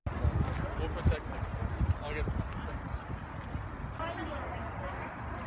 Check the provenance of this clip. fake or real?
real